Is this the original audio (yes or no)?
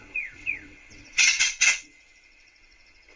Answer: no